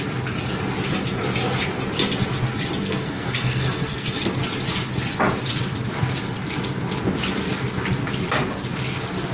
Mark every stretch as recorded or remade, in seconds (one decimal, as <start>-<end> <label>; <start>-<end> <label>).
0.0-2.8 recorded; 2.8-4.3 remade; 4.3-9.3 recorded

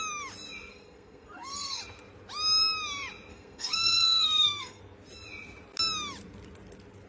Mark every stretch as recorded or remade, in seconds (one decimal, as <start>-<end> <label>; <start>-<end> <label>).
0.0-0.7 recorded; 0.7-1.8 remade; 1.8-3.3 recorded; 3.3-4.8 remade; 4.8-7.1 recorded

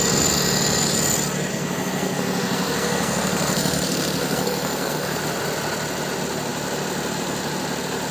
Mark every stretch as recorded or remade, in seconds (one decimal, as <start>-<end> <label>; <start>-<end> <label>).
0.0-1.5 recorded; 1.5-5.2 remade; 5.2-8.1 recorded

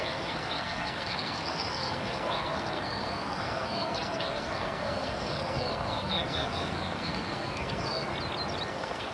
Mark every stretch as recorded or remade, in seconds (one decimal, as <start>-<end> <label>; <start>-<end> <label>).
0.0-8.1 remade; 8.1-8.7 recorded; 8.7-9.1 remade

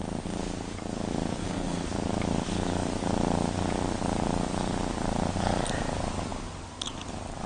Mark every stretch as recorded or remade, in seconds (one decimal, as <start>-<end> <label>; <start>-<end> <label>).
0.0-1.3 recorded; 1.3-1.8 remade; 1.8-7.5 recorded

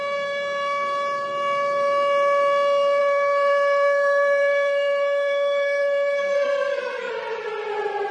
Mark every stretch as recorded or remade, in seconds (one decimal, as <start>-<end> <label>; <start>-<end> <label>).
0.0-3.0 recorded; 3.0-7.1 remade; 7.1-8.1 recorded